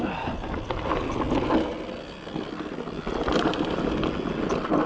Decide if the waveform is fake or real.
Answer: real